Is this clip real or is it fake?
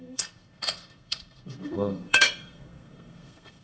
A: fake